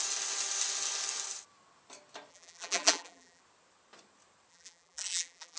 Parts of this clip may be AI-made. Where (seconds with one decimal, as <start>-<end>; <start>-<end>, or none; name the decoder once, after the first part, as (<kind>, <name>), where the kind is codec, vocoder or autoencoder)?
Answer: 2.3-3.4 (vocoder, BigVGAN v2); 4.5-5.6